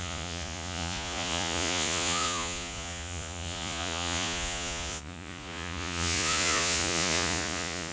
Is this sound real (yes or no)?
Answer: no